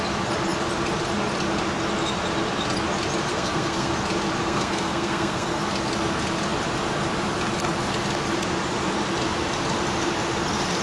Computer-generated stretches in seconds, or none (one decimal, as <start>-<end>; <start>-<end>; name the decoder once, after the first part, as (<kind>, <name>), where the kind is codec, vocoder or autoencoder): 3.3-3.9 (codec, SNAC); 4.4-5.6